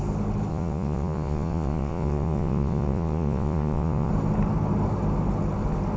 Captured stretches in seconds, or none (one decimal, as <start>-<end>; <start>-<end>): 0.0-0.5; 4.1-6.0